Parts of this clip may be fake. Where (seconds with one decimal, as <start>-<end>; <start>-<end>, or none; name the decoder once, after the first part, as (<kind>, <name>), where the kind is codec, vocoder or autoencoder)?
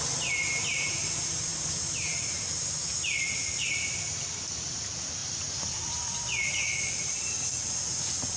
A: none